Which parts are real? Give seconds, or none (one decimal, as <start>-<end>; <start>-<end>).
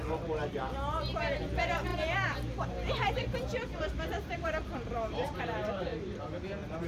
5.9-6.9